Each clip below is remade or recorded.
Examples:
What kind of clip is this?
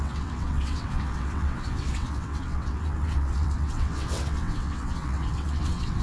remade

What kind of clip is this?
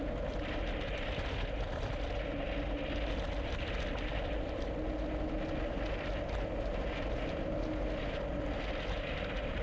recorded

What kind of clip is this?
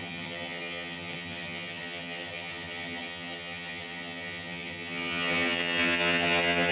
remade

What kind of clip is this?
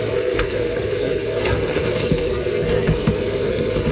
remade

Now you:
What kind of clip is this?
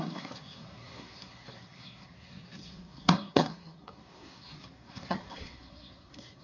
remade